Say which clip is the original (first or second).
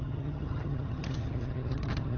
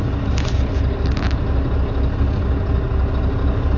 second